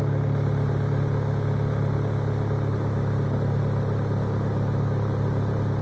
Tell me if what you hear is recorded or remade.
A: recorded